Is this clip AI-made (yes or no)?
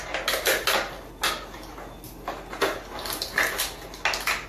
no